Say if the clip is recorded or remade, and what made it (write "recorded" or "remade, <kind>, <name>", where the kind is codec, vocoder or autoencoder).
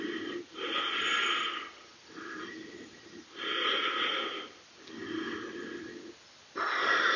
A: recorded